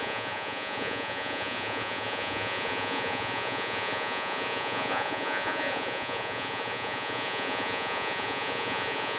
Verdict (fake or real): fake